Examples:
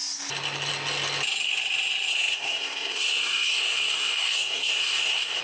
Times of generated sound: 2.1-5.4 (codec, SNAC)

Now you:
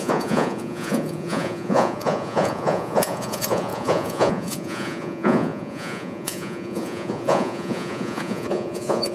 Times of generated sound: 0.0-9.1 (vocoder, Vocos)

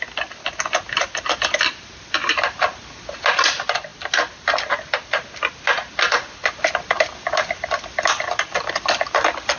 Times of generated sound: none

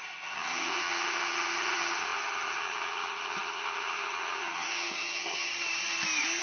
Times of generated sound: 0.0-5.5 (vocoder, HiFi-GAN)

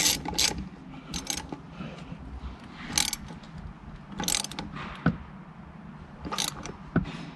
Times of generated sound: none

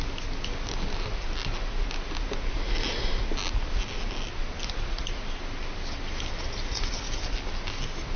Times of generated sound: none

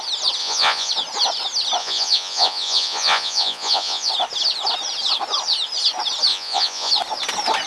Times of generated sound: 0.4-0.9 (vocoder, Vocos); 1.8-4.1; 6.3-6.9